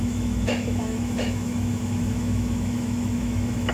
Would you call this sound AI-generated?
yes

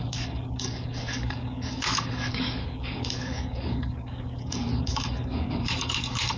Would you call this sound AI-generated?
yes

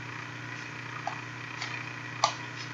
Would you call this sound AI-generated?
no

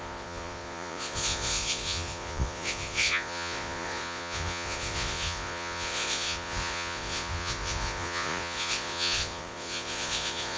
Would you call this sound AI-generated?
yes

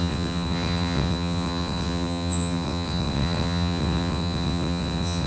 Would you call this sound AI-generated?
yes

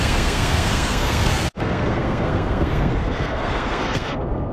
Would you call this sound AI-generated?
yes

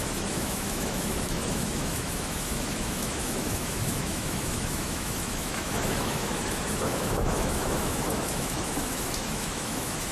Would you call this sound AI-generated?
yes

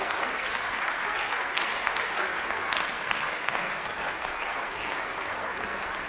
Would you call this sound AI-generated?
yes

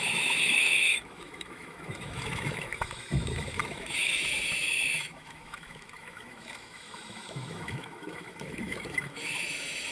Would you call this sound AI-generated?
yes